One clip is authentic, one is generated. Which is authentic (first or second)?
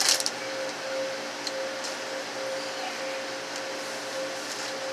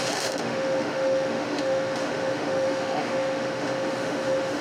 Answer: first